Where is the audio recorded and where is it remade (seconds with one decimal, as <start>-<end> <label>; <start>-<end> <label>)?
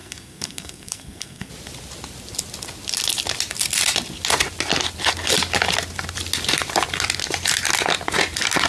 0.0-1.5 remade; 1.5-8.7 recorded